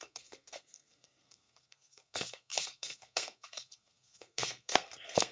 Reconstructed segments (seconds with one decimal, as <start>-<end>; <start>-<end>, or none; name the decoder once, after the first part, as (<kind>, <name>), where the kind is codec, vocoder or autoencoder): 0.0-5.3 (codec, SNAC)